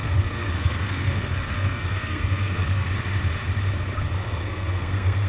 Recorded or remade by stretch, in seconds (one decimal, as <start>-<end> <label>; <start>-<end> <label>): 0.0-2.9 remade; 2.9-4.2 recorded; 4.2-5.3 remade